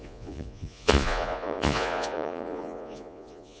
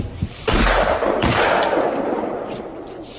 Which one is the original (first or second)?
second